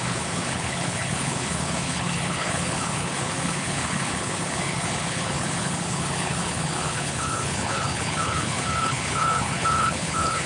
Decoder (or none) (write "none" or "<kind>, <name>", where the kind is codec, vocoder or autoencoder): codec, HILCodec